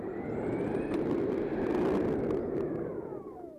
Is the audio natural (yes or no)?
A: yes